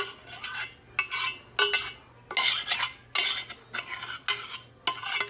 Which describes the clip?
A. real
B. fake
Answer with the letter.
A